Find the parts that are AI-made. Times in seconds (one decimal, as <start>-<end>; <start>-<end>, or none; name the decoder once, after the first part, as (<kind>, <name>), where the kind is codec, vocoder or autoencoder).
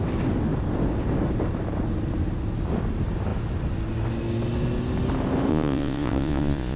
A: 5.5-6.8 (vocoder, Vocos)